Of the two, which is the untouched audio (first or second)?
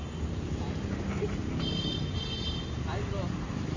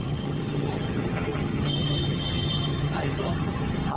first